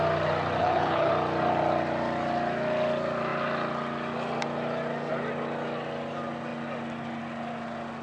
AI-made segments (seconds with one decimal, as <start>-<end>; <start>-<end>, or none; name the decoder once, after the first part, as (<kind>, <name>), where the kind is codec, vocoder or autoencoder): 0.6-1.1 (codec, HILCodec)